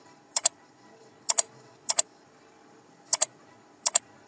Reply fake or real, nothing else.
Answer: fake